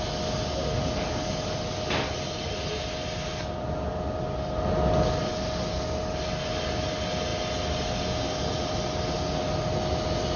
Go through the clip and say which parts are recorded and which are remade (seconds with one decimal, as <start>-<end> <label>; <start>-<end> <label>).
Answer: 0.0-10.4 recorded